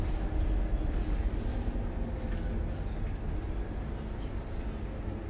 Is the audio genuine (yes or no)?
yes